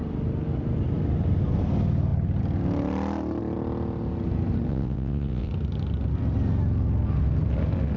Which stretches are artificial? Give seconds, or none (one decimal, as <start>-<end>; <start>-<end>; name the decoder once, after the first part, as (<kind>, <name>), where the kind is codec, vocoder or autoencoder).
4.7-5.5 (vocoder, WaveNeXt)